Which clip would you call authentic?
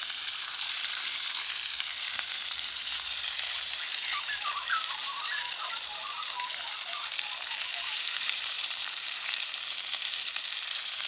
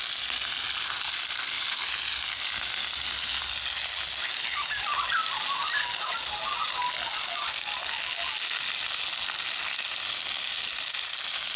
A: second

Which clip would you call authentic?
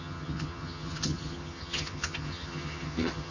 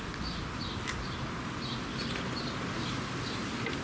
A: second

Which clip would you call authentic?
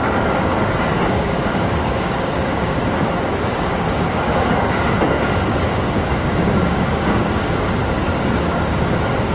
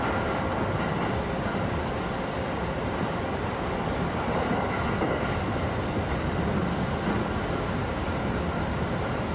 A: second